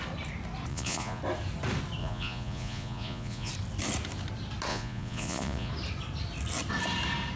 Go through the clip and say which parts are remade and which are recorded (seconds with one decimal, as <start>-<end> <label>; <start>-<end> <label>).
0.0-0.7 recorded; 0.7-1.2 remade; 1.2-2.0 recorded; 2.0-3.5 remade; 3.5-4.7 recorded; 4.7-5.7 remade; 5.7-7.4 recorded